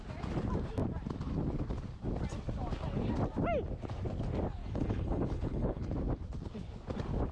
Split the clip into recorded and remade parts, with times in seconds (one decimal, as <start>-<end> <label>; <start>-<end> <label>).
0.0-4.6 recorded; 4.6-5.9 remade; 5.9-7.3 recorded